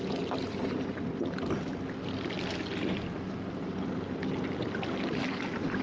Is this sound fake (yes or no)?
no